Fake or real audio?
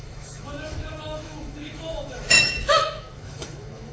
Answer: fake